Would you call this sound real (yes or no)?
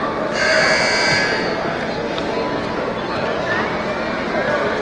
yes